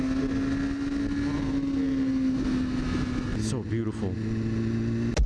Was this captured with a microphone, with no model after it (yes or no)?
yes